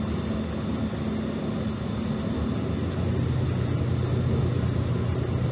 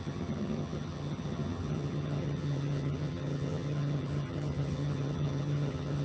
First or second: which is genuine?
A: first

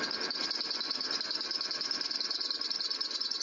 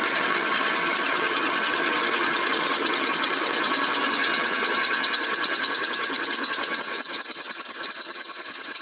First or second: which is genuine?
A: first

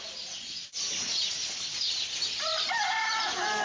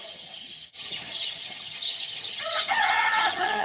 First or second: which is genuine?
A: first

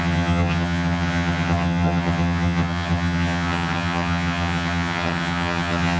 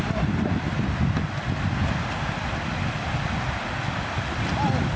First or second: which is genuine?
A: second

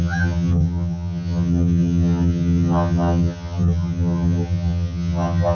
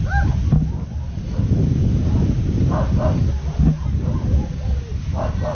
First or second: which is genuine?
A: second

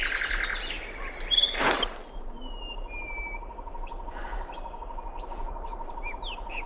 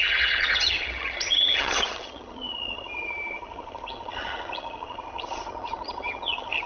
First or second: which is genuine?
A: first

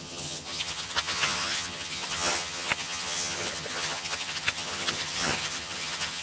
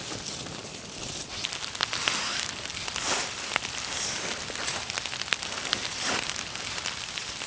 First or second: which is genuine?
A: second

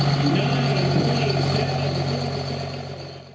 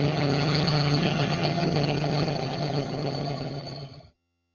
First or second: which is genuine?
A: first